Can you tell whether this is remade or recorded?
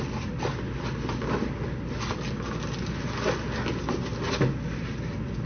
recorded